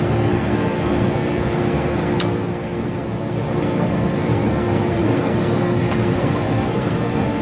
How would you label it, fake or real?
fake